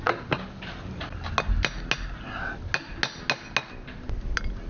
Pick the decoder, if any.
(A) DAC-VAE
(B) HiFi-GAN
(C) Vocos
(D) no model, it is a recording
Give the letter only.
D